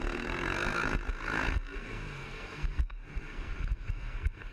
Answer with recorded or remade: remade